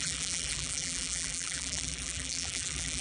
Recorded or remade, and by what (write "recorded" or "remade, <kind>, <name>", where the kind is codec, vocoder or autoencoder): remade, vocoder, BigVGAN v2